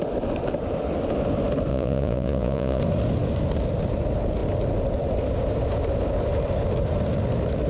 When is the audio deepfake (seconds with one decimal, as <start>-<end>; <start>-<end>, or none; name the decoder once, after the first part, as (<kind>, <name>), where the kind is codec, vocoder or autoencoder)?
1.7-2.8 (vocoder, Vocos)

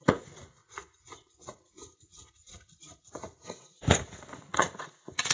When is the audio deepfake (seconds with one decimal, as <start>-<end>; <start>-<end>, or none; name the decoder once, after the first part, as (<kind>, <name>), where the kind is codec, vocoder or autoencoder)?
0.0-5.3 (vocoder, Vocos)

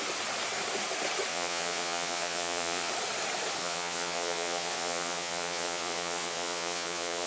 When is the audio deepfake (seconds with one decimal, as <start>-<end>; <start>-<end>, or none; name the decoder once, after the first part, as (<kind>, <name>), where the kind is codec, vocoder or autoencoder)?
1.3-2.9 (vocoder, Vocos); 3.6-7.3